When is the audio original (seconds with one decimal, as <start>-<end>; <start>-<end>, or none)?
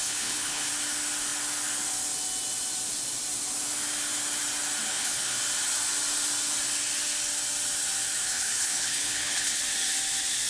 0.7-4.9; 5.4-8.2; 9.6-10.5